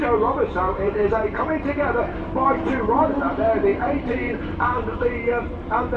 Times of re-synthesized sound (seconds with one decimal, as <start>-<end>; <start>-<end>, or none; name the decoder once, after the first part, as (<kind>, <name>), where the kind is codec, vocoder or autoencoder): 0.7-6.0 (vocoder, BigVGAN v2)